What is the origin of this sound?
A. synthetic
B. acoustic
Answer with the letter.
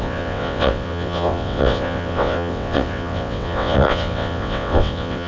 A